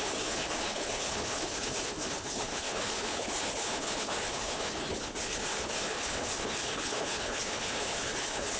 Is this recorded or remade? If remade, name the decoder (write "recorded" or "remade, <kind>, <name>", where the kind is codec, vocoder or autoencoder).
remade, codec, HILCodec